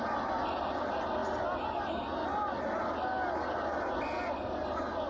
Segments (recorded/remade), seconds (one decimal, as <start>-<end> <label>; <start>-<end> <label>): 0.0-5.1 recorded